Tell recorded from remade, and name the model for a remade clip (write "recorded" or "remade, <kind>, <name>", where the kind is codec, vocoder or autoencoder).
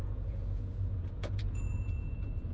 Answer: remade, vocoder, Vocos